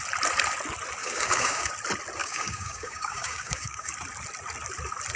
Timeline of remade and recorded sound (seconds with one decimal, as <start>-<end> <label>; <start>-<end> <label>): 0.0-1.0 recorded; 1.0-1.7 remade; 1.7-2.2 recorded; 2.2-3.9 remade; 3.9-5.2 recorded